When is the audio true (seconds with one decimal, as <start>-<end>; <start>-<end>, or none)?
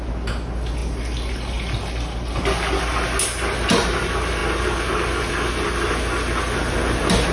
0.0-7.3